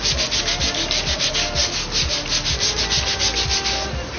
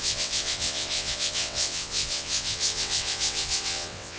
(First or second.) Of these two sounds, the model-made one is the second